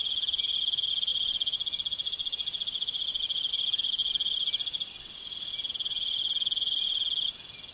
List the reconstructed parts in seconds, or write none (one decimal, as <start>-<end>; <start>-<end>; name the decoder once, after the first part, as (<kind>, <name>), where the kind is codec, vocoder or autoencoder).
none